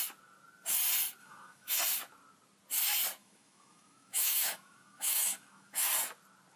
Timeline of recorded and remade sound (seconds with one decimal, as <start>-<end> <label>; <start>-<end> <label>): 0.0-1.2 recorded; 1.2-1.8 remade; 1.8-3.2 recorded; 3.2-5.9 remade; 5.9-6.6 recorded